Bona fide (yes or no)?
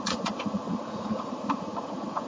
no